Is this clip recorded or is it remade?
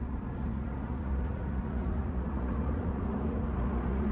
remade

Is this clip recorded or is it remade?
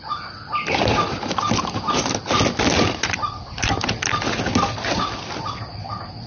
recorded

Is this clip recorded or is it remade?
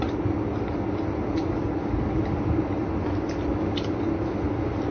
recorded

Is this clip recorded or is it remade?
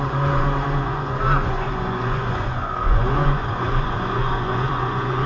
remade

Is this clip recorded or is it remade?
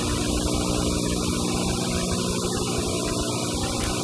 recorded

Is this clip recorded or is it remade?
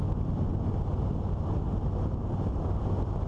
recorded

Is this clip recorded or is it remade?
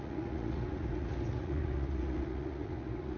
remade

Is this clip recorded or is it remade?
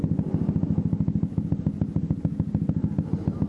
recorded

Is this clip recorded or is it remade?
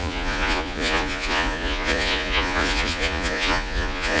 remade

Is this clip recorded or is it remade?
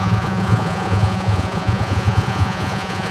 remade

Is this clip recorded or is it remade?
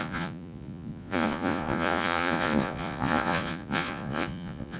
remade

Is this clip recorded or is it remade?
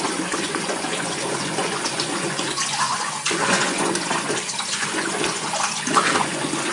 remade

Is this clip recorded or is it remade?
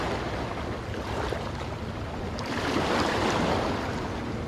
recorded